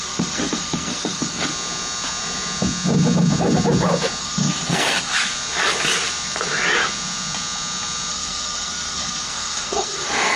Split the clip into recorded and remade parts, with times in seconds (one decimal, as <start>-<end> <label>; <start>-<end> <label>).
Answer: 0.0-1.5 remade; 1.5-4.2 recorded; 4.2-5.1 remade; 5.1-8.1 recorded; 8.1-10.4 remade